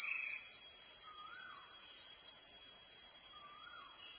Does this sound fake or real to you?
fake